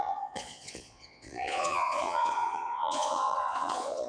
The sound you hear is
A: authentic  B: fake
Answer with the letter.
B